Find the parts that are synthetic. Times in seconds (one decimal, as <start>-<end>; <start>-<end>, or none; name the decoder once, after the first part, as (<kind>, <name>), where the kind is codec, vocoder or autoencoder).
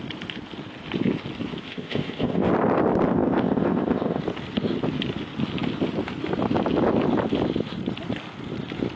1.6-2.5 (codec, ZipCodec); 3.1-4.2